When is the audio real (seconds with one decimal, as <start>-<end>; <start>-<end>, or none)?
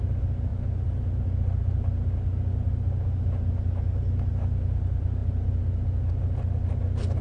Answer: 0.0-7.2